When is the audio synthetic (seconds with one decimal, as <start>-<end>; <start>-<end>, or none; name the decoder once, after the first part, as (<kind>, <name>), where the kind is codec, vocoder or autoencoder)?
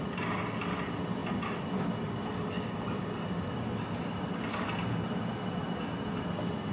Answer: none